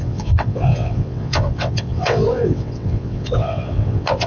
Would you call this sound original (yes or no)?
no